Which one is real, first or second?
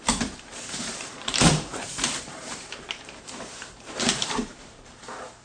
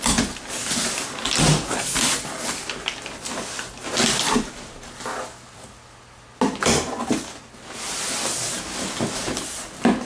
second